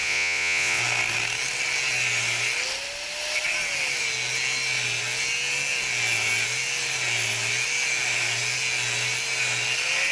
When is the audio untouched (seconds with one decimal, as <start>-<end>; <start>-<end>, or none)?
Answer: 0.8-10.1